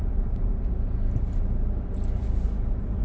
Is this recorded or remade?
recorded